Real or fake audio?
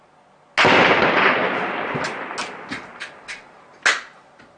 real